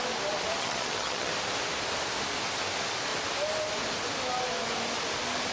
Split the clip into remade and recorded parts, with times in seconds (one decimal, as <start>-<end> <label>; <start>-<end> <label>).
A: 0.0-0.6 recorded; 0.6-1.3 remade; 1.3-5.5 recorded